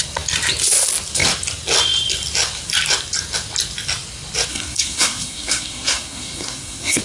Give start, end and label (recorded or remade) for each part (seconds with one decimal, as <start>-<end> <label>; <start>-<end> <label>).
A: 0.0-4.5 recorded; 4.5-7.0 remade